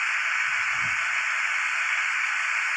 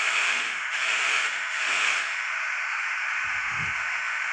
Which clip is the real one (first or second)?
first